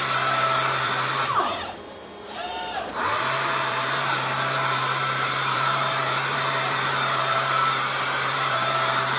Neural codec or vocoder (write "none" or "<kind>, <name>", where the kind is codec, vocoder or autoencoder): vocoder, BigVGAN v2